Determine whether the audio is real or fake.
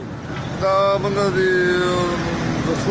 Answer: real